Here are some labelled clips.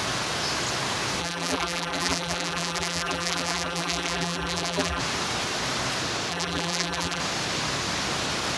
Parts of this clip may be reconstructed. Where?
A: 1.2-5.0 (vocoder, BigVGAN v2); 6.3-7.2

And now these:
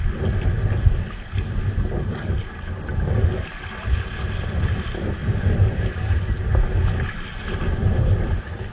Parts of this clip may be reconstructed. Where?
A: none